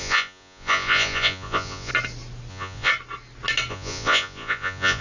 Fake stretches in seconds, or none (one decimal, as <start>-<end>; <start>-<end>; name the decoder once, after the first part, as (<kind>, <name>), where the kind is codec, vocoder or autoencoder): 0.0-1.9 (vocoder, Vocos); 2.5-2.9; 3.7-5.0